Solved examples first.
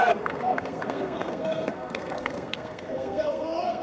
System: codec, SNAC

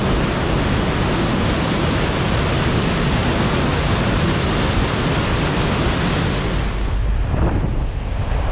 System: none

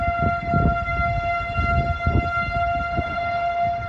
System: none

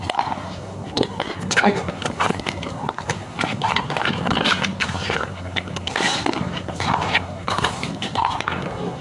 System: codec, SNAC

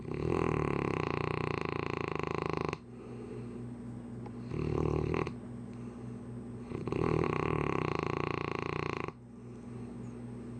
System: none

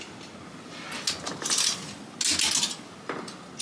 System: none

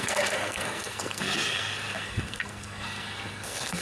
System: codec, SNAC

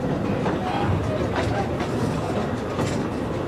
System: none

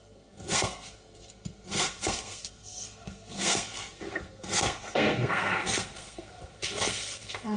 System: codec, SNAC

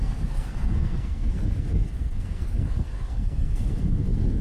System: codec, SNAC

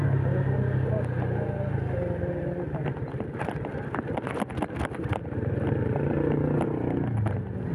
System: none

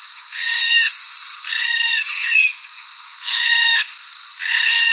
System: codec, SNAC